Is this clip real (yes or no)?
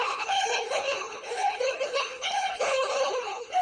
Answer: no